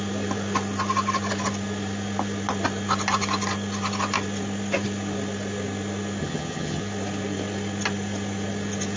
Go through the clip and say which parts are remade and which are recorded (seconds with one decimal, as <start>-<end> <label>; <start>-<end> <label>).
0.0-6.2 recorded; 6.2-6.8 remade; 6.8-9.0 recorded